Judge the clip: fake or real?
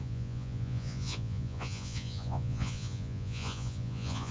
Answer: fake